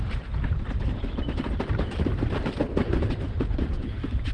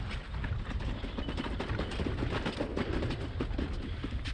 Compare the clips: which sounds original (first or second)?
second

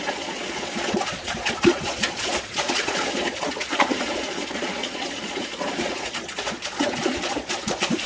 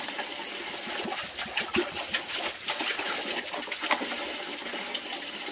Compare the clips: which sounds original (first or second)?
second